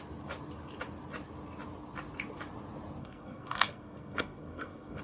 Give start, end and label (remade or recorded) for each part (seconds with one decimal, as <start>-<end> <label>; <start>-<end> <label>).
0.0-3.0 recorded; 3.0-5.0 remade